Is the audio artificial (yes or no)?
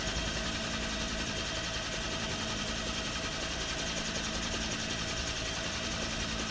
yes